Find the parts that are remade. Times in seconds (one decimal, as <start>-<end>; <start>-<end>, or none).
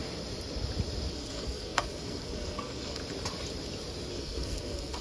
1.1-3.0; 4.1-5.0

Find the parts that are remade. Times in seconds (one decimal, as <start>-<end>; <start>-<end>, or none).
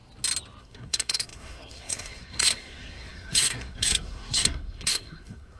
0.6-5.6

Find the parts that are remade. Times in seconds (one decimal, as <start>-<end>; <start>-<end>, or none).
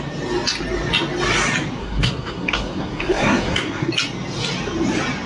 1.8-3.9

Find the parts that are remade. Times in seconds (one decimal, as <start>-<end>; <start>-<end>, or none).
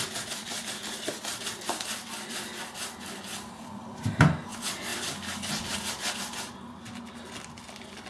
none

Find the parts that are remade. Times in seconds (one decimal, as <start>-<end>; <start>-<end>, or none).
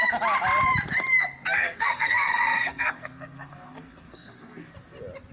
1.6-4.7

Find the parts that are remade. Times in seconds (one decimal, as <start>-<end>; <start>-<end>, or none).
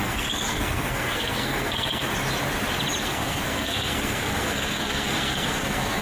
0.0-2.1; 3.0-6.0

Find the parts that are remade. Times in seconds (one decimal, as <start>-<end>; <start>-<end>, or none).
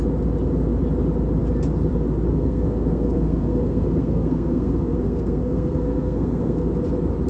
2.3-6.7